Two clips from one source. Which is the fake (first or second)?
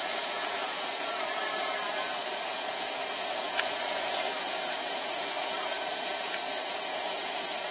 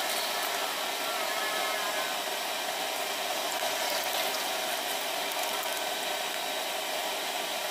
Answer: first